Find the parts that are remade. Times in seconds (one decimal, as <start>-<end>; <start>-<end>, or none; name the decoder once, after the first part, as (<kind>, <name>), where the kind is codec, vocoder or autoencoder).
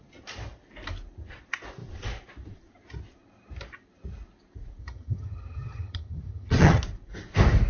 4.8-6.8 (vocoder, HiFi-GAN)